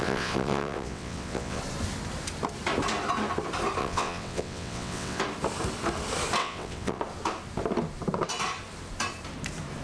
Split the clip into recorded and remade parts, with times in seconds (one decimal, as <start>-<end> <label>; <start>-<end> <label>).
0.0-1.6 remade; 1.6-3.8 recorded; 3.8-5.2 remade; 5.2-6.4 recorded; 6.4-7.0 remade; 7.0-9.8 recorded